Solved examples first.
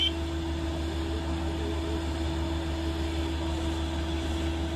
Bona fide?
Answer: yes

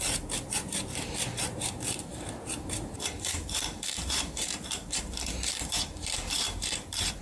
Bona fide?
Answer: no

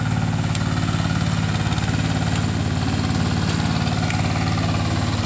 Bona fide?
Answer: yes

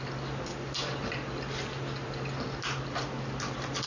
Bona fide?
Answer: yes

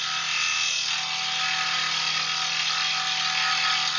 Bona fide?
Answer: yes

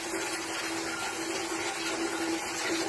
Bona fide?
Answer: yes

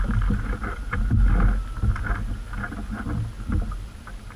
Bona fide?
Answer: yes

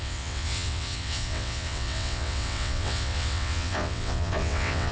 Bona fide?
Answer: no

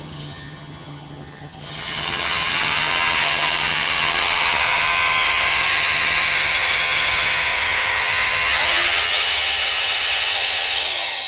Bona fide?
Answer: no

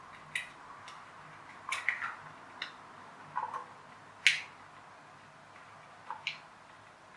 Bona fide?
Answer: yes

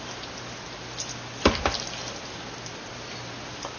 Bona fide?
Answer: yes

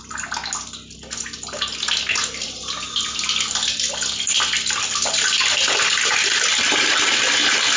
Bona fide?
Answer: yes